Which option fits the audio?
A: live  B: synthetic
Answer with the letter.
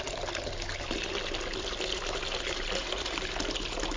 A